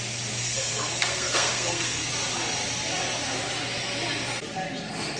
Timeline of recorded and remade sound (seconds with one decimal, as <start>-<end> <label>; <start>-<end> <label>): 0.0-0.4 recorded; 0.4-2.1 remade; 2.1-5.2 recorded